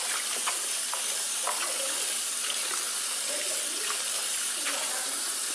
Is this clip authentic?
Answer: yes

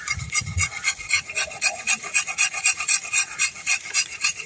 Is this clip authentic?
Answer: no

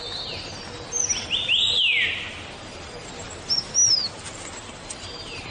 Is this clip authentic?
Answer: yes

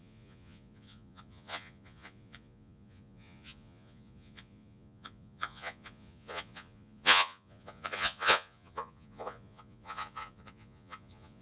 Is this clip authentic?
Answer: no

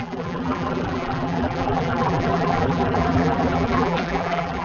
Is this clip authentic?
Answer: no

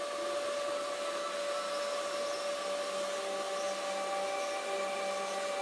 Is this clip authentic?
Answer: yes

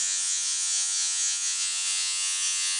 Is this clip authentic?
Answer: no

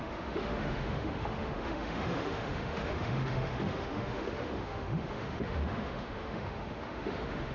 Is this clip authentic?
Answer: no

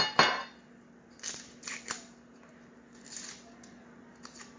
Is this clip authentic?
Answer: yes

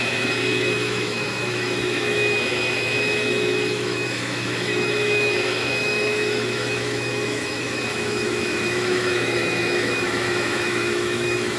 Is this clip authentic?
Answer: no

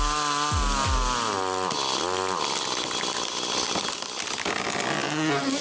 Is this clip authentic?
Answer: yes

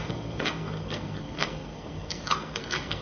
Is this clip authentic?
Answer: no